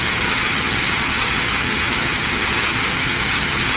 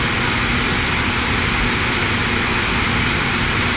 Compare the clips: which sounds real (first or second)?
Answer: second